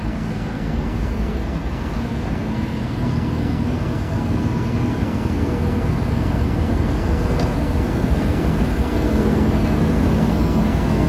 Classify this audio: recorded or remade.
remade